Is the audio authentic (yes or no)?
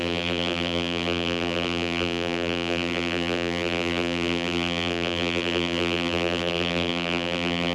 no